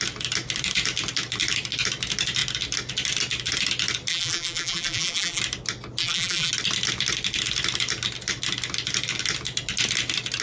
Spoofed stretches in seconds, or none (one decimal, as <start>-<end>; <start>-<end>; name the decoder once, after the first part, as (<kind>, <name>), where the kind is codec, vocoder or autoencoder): 4.1-5.4 (vocoder, BigVGAN v2); 6.0-6.5

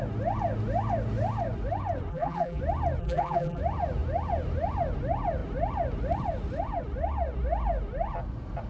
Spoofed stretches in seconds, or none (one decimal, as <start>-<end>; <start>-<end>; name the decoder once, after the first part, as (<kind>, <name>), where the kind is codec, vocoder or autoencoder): 2.1-2.6 (vocoder, BigVGAN v2); 3.0-3.6

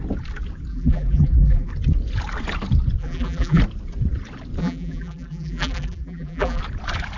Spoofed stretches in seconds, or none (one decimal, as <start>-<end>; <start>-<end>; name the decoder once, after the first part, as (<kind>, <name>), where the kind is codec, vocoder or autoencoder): 0.7-1.7 (vocoder, BigVGAN v2); 3.0-3.6; 4.6-6.6

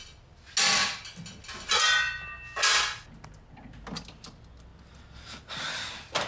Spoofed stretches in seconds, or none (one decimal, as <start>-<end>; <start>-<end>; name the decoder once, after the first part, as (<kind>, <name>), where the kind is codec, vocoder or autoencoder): none

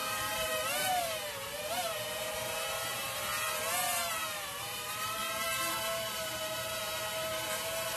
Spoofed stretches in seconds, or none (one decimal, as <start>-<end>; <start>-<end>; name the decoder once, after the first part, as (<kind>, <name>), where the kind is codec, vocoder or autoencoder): 0.0-3.3 (vocoder, BigVGAN v2); 4.1-5.2; 5.7-8.0

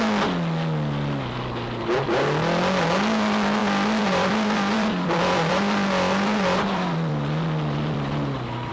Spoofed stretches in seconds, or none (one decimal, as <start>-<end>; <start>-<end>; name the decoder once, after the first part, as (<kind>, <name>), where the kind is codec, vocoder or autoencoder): 3.6-8.7 (vocoder, BigVGAN v2)